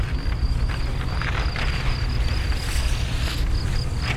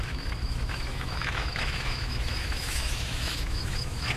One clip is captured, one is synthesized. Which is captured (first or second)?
first